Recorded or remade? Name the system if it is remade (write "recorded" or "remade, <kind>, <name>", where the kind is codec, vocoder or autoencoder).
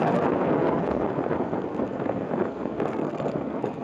remade, codec, SNAC